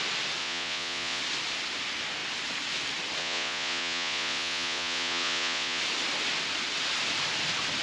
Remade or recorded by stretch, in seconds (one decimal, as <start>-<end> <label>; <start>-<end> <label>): 0.0-0.4 recorded; 0.4-1.2 remade; 1.2-3.2 recorded; 3.2-5.8 remade; 5.8-7.8 recorded